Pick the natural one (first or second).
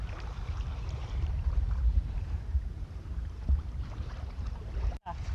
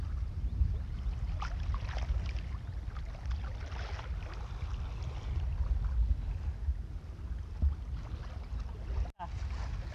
second